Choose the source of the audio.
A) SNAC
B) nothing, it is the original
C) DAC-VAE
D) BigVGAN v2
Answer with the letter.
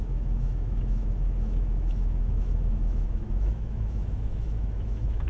C